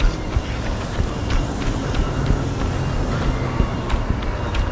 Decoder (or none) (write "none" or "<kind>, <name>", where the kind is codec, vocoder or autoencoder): none